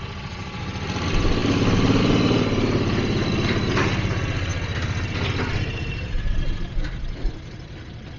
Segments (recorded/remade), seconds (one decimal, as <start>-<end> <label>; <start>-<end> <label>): 0.0-8.2 recorded